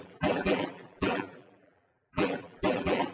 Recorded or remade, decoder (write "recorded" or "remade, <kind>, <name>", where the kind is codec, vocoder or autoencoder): remade, vocoder, BigVGAN v2